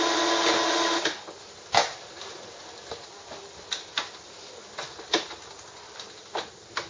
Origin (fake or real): real